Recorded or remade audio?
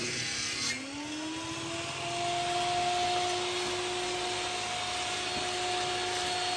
recorded